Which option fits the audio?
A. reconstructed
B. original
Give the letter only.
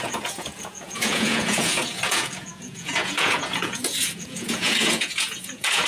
A